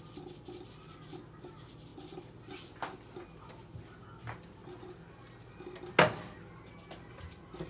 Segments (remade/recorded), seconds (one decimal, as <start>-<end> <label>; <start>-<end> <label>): 0.0-7.7 recorded

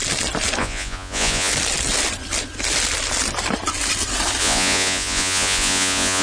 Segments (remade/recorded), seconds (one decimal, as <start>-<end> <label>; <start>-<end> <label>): 0.0-0.6 recorded; 0.6-1.5 remade; 1.5-4.4 recorded; 4.4-6.2 remade

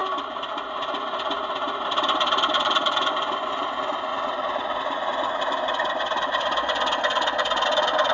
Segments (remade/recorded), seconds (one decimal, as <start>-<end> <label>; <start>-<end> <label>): 0.0-4.1 recorded; 4.1-5.4 remade; 5.4-8.1 recorded

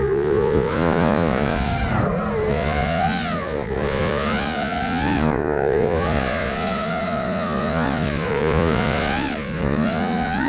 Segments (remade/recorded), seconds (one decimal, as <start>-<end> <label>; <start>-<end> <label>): 0.0-1.7 remade; 1.7-2.5 recorded; 2.5-10.5 remade

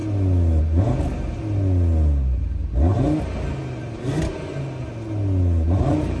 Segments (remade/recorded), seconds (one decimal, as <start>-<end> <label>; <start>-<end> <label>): 0.0-6.2 recorded

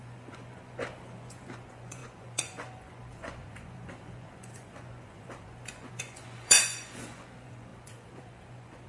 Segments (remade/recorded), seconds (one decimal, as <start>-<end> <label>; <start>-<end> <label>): 0.0-8.9 remade